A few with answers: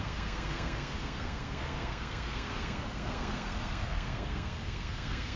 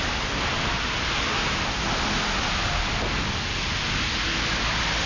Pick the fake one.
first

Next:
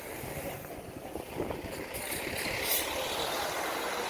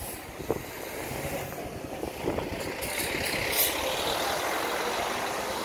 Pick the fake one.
first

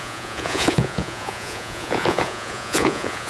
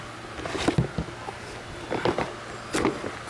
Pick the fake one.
first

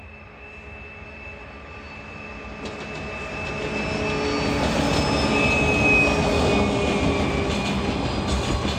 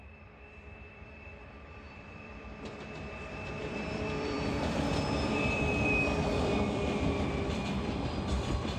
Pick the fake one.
second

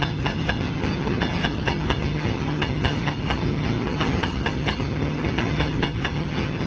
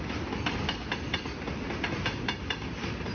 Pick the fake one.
first